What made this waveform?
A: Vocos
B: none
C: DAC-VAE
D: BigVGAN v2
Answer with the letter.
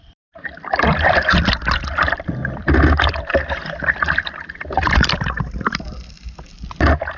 D